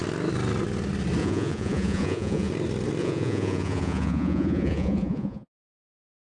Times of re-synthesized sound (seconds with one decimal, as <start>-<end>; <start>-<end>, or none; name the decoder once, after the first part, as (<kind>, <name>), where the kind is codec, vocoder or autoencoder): 1.2-2.5 (vocoder, Vocos); 3.0-5.7